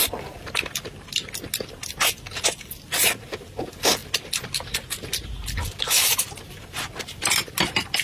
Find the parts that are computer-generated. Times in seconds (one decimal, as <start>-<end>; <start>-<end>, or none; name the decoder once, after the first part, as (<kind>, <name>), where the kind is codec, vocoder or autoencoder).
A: none